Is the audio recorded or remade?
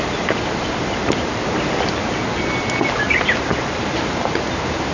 recorded